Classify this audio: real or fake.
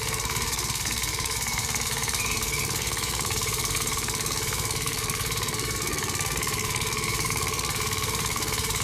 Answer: fake